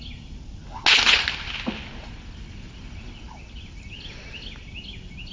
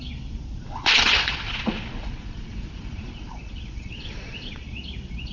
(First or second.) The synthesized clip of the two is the second